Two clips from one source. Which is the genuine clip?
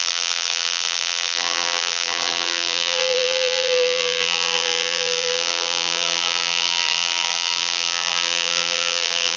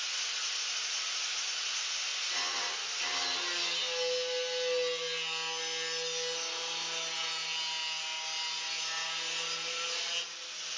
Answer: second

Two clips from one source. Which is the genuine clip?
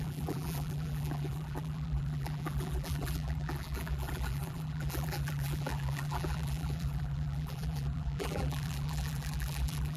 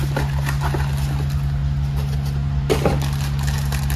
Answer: second